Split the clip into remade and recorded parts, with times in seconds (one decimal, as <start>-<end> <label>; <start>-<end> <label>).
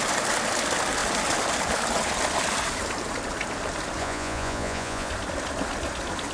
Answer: 0.0-4.0 recorded; 4.0-5.1 remade; 5.1-6.3 recorded